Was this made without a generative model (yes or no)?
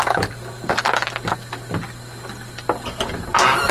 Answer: yes